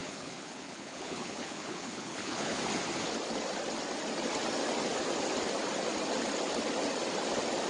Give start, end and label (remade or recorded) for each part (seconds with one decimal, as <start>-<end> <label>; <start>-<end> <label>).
0.0-2.6 remade; 2.6-7.7 recorded